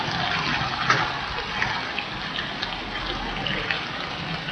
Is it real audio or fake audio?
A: real